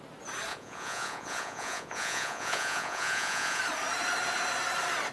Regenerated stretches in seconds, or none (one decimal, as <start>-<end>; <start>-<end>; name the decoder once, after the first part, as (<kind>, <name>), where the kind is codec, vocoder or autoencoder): 0.5-3.6 (vocoder, Vocos)